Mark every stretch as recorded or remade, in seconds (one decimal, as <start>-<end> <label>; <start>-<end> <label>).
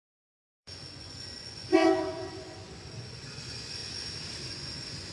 0.0-3.8 remade; 3.8-4.5 recorded; 4.5-5.1 remade